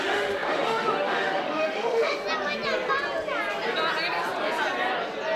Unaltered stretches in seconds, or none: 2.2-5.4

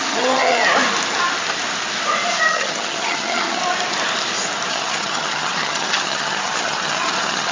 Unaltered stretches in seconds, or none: 0.6-2.5; 3.6-4.7